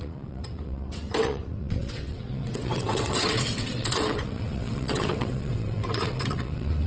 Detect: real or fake fake